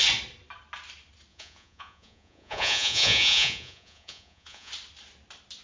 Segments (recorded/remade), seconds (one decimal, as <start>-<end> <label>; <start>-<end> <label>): 0.0-1.3 recorded; 1.3-4.7 remade; 4.7-5.6 recorded